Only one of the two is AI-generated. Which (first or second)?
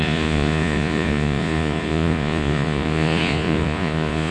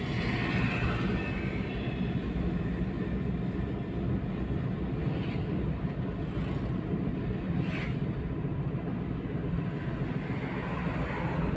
first